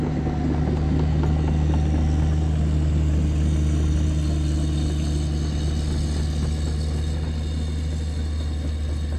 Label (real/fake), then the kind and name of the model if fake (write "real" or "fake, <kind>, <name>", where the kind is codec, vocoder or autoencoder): real